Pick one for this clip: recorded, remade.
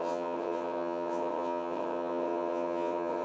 remade